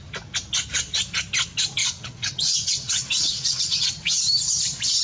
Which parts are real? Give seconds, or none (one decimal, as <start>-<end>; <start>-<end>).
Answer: 0.0-1.8; 4.1-5.0